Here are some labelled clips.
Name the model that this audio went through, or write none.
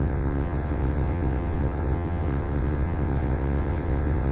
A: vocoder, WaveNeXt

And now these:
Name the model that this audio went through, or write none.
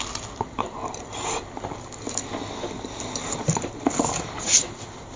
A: none